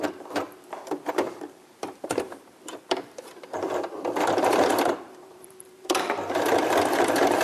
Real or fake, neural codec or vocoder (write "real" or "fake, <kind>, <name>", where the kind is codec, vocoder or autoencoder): fake, vocoder, BigVGAN v2